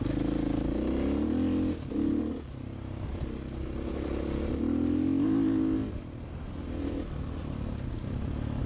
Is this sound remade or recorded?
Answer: recorded